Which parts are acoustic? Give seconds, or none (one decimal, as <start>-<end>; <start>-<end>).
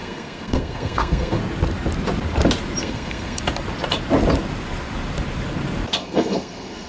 1.4-2.8; 3.4-6.0